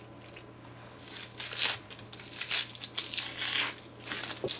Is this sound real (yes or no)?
yes